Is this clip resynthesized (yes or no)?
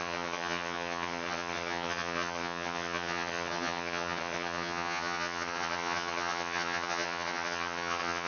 yes